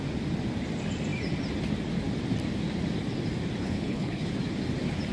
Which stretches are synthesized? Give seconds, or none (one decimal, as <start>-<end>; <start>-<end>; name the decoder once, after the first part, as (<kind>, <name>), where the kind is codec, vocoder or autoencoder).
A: 3.6-4.3 (codec, HILCodec)